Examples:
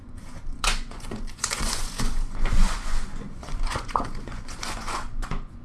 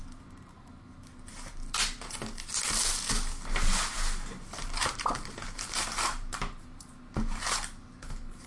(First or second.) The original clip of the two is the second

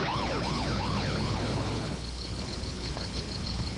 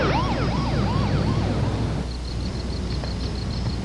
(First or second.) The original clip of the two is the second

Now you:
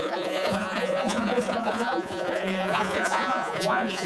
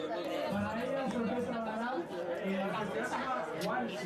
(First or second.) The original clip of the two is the second